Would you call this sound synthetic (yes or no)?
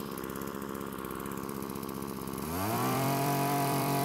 yes